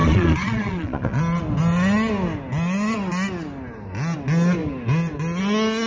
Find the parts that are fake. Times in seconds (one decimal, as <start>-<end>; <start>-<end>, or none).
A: 0.0-1.2